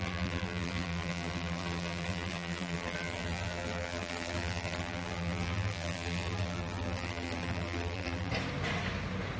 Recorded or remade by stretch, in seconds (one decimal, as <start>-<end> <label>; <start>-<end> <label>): 0.0-8.3 remade; 8.3-9.4 recorded